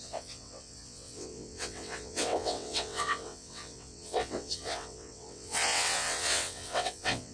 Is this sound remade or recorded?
remade